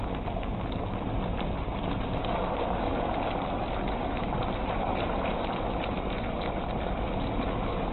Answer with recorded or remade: recorded